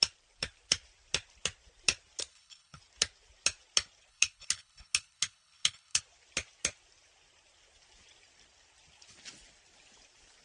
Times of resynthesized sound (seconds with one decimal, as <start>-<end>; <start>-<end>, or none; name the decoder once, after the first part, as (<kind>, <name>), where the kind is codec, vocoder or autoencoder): 2.3-2.8 (codec, HILCodec); 4.1-6.0